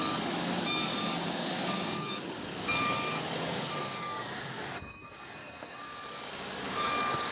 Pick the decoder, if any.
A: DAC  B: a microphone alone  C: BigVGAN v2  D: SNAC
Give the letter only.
A